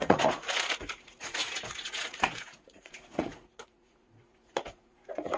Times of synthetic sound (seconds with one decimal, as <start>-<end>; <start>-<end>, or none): 0.0-5.4

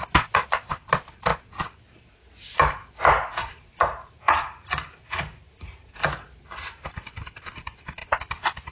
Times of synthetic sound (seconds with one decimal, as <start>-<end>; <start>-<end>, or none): 3.4-5.9

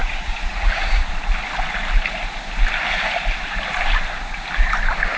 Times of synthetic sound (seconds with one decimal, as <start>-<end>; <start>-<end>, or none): 0.0-1.1

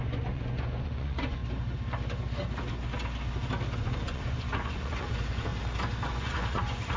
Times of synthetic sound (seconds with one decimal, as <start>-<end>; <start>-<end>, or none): 0.0-1.4; 3.8-5.5; 6.1-7.0